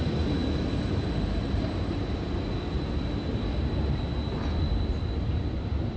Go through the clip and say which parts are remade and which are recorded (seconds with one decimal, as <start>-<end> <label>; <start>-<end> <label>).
0.0-6.0 recorded